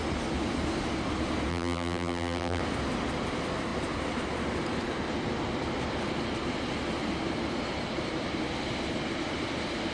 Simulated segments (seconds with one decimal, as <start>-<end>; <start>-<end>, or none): 1.5-2.6